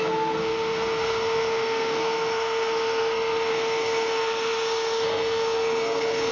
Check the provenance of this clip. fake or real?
fake